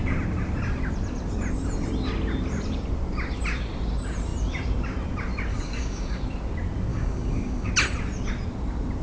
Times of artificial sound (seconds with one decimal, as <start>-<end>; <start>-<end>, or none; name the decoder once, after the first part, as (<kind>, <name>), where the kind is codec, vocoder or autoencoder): 5.5-6.2 (codec, DAC); 6.9-7.7